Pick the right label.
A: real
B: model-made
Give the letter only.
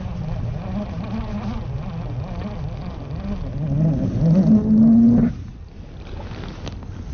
A